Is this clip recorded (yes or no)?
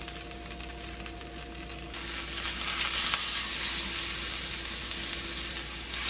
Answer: yes